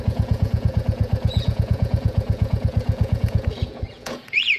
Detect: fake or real fake